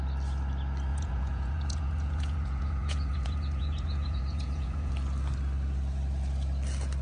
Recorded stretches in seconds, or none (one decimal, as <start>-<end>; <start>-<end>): 0.0-0.9; 4.9-7.0